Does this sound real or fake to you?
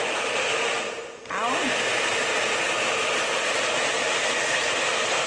real